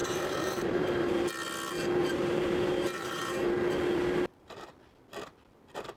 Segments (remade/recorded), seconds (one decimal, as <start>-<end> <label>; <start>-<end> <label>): 0.0-1.2 remade; 1.2-2.0 recorded; 2.0-3.5 remade; 3.5-6.0 recorded